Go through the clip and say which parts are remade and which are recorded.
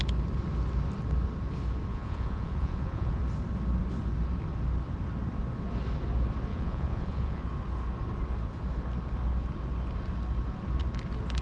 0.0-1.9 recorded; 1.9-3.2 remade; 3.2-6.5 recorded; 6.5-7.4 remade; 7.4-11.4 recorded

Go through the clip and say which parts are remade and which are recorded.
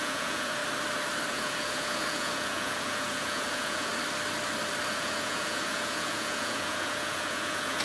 0.0-0.6 remade; 0.6-1.3 recorded; 1.3-3.9 remade; 3.9-4.9 recorded; 4.9-7.8 remade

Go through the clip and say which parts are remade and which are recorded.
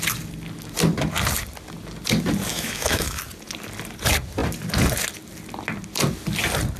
0.0-2.5 recorded; 2.5-3.2 remade; 3.2-6.8 recorded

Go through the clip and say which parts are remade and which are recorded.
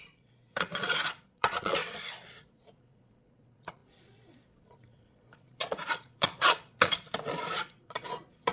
0.0-1.8 remade; 1.8-2.4 recorded; 2.4-8.5 remade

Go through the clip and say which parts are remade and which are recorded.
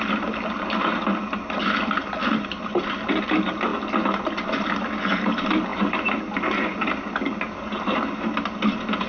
0.0-9.1 recorded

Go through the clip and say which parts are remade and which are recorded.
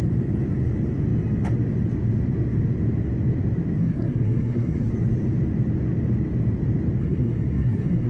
0.0-3.8 recorded; 3.8-4.9 remade; 4.9-7.0 recorded; 7.0-8.1 remade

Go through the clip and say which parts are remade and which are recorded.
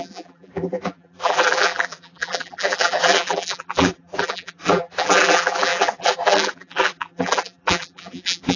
0.0-8.6 remade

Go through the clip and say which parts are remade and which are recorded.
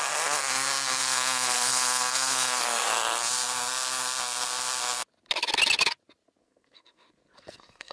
0.0-0.4 remade; 0.4-1.0 recorded; 1.0-2.9 remade; 2.9-6.4 recorded; 6.4-7.9 remade